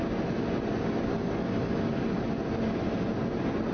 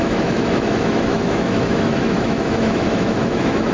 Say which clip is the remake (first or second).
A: second